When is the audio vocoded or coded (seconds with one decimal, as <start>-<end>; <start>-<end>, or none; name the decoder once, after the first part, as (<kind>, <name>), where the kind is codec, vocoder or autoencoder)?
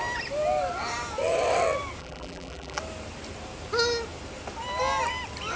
2.0-2.8 (vocoder, BigVGAN v2)